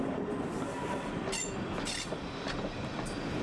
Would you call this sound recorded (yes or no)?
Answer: yes